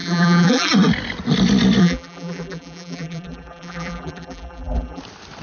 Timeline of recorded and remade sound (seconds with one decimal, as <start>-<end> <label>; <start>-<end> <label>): 0.0-0.7 remade; 0.7-1.8 recorded; 1.8-5.0 remade; 5.0-5.4 recorded